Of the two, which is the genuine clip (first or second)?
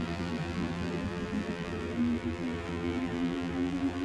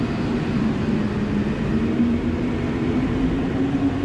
second